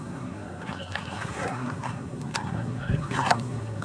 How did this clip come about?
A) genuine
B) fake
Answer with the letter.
B